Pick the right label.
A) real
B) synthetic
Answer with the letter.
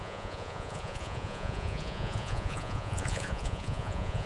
B